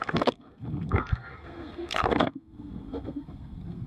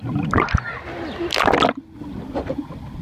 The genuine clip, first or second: second